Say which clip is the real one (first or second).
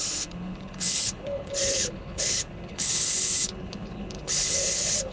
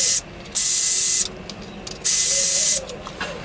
second